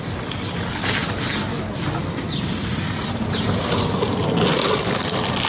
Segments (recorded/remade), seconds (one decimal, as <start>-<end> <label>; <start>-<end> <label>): 0.0-5.5 recorded